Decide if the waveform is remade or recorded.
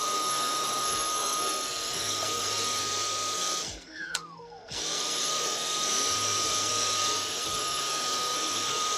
remade